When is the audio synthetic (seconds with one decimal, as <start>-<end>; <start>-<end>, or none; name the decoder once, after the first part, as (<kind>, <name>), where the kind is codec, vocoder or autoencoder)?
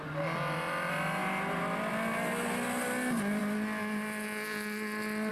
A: none